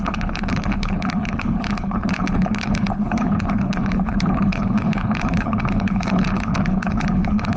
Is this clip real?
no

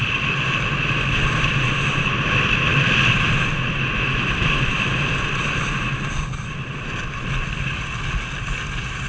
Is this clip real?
yes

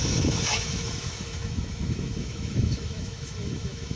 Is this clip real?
no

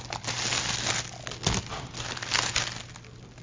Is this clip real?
yes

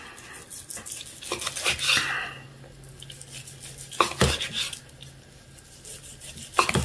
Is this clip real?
yes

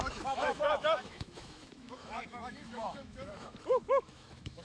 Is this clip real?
no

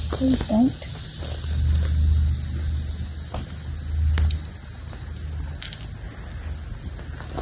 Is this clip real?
yes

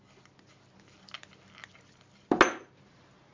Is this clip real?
yes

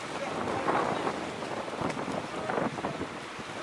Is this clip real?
yes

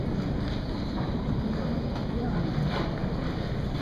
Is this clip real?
yes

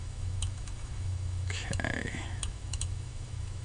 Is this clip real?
no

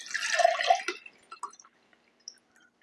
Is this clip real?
yes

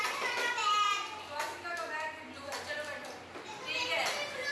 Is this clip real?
yes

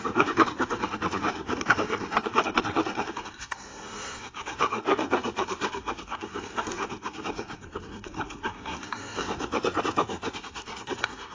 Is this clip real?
no